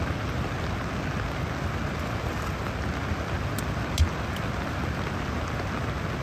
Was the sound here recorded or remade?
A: recorded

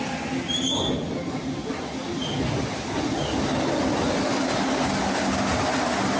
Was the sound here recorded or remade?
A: recorded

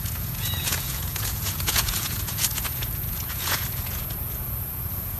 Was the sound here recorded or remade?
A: remade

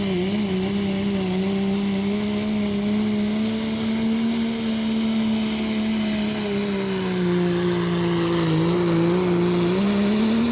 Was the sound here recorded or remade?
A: recorded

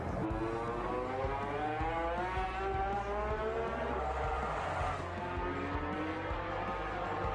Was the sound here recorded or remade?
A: recorded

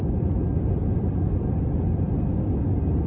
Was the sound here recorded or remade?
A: recorded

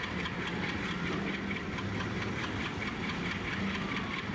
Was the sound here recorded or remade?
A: recorded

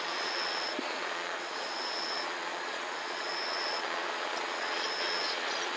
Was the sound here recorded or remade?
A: remade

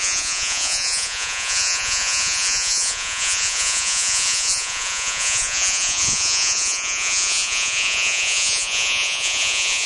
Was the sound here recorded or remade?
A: remade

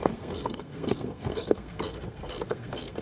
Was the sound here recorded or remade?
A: remade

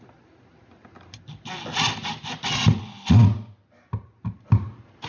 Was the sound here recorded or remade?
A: recorded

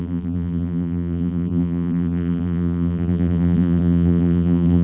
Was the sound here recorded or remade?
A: remade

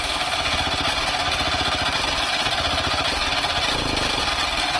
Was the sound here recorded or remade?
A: recorded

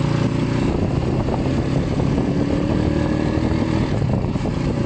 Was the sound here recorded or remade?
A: recorded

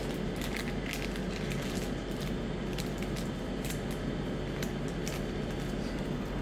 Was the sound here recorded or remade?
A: recorded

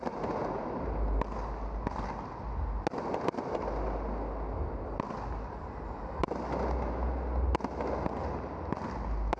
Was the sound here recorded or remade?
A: recorded